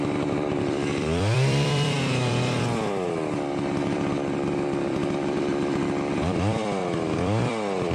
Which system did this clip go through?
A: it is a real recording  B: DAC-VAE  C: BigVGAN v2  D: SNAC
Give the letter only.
C